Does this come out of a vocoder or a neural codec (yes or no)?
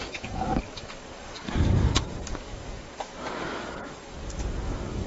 yes